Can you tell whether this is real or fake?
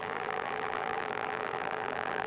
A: fake